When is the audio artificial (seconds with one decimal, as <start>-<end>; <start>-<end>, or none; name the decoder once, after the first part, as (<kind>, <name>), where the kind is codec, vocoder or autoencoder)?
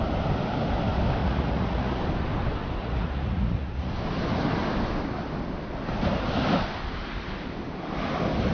1.2-2.0 (vocoder, Vocos); 2.8-3.9